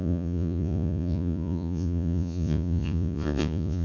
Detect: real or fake fake